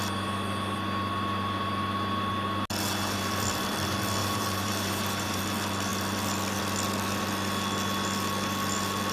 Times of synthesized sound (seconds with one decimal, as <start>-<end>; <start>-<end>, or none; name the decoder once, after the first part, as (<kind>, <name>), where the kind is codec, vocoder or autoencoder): 4.2-5.4 (vocoder, BigVGAN v2)